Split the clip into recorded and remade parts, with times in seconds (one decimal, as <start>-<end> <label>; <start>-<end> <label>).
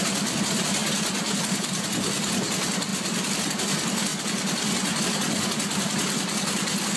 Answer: 0.0-0.8 remade; 0.8-1.4 recorded; 1.4-4.1 remade; 4.1-5.0 recorded; 5.0-7.0 remade